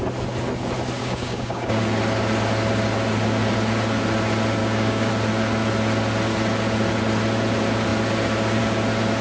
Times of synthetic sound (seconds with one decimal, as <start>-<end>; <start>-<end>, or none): 1.0-1.8; 4.6-5.1